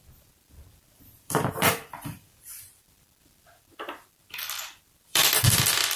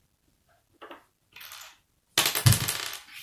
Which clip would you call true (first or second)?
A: second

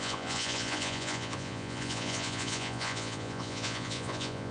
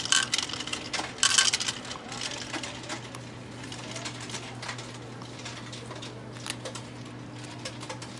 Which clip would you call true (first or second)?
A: second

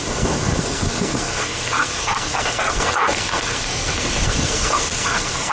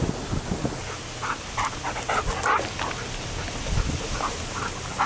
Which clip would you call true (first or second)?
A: second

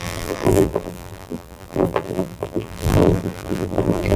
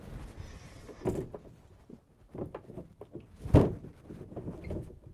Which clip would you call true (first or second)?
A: second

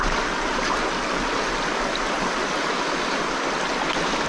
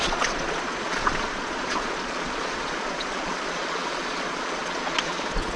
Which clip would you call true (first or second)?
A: first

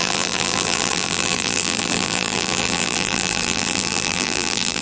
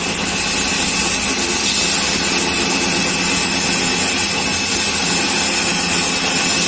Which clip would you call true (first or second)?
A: second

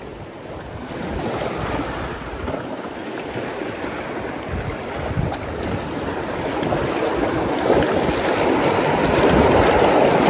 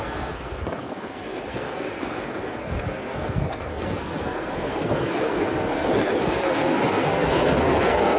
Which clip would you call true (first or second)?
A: first